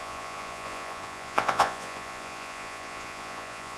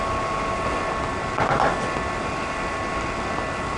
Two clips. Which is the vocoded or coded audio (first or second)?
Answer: first